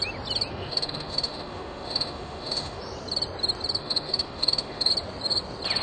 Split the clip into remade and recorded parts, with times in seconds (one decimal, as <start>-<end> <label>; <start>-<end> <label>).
0.0-0.5 recorded; 0.5-2.8 remade; 2.8-3.8 recorded; 3.8-4.9 remade; 4.9-5.8 recorded